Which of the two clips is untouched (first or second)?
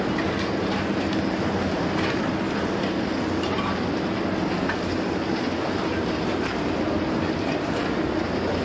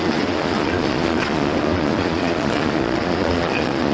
first